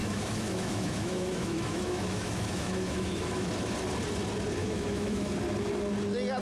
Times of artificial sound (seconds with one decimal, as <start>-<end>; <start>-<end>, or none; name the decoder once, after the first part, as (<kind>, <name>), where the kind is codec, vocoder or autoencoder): 0.0-3.5 (autoencoder, DAC-VAE); 4.6-5.3